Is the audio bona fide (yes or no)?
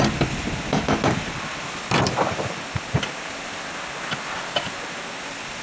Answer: yes